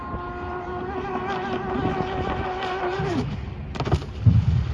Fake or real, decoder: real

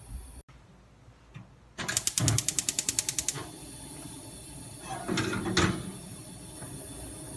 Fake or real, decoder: real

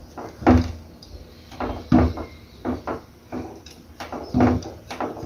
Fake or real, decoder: real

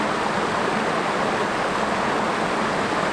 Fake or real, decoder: real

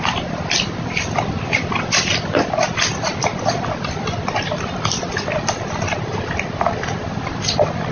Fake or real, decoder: real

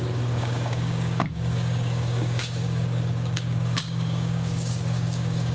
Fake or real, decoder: fake, codec, DAC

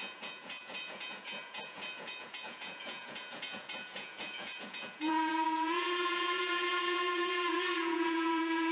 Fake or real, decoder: fake, vocoder, Vocos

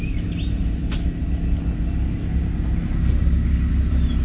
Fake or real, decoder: real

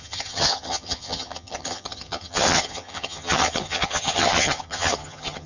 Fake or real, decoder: fake, vocoder, HiFi-GAN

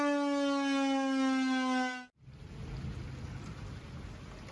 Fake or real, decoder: real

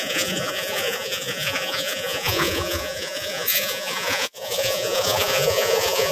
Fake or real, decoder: fake, vocoder, Vocos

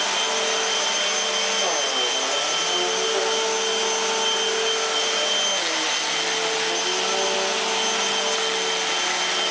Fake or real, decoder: real